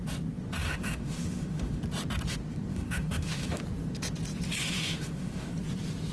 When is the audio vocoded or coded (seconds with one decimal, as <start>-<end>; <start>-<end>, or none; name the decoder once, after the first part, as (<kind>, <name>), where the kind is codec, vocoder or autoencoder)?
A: 0.6-1.8 (autoencoder, DAC-VAE); 2.7-3.6; 4.6-5.5